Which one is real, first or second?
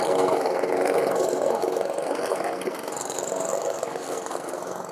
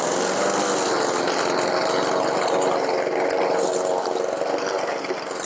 second